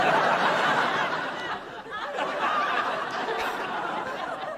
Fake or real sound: fake